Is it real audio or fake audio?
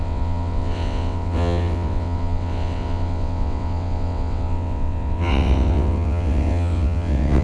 fake